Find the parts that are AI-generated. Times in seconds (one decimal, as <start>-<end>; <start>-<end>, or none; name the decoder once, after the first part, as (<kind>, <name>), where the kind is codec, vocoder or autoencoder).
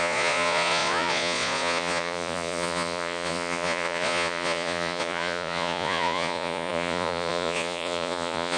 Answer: 0.0-8.6 (vocoder, Vocos)